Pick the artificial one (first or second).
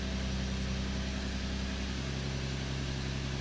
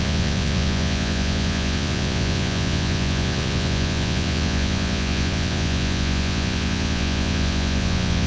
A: second